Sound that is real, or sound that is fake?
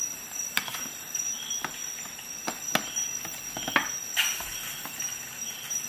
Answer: fake